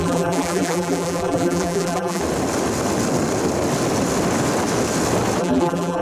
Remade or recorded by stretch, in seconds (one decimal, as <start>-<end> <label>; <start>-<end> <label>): 0.0-2.2 remade; 2.2-5.4 recorded; 5.4-6.0 remade